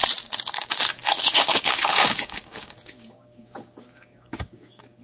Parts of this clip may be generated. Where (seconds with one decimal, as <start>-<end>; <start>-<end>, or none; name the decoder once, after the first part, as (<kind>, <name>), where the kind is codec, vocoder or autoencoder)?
0.5-5.0 (codec, DAC)